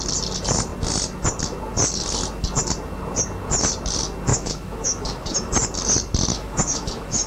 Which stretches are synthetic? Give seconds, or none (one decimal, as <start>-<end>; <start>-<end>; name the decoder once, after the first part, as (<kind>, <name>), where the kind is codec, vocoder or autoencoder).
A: 4.3-5.5 (autoencoder, DAC-VAE); 6.3-7.3